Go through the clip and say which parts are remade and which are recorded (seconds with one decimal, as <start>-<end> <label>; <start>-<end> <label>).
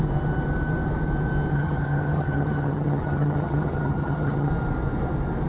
0.0-1.5 recorded; 1.5-4.5 remade; 4.5-5.5 recorded